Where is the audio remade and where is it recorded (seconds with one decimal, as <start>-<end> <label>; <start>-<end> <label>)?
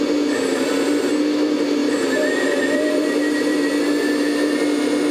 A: 0.0-0.5 recorded; 0.5-1.1 remade; 1.1-1.8 recorded; 1.8-3.7 remade; 3.7-5.1 recorded